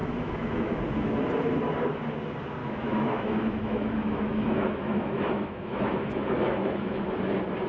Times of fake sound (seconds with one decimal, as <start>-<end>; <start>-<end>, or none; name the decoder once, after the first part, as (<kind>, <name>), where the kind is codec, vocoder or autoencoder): 0.0-0.8 (autoencoder, DAC-VAE); 2.6-7.2